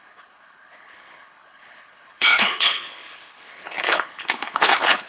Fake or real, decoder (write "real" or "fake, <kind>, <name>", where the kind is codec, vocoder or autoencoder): fake, codec, HILCodec